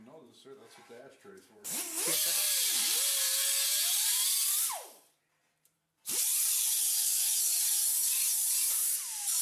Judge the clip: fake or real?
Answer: fake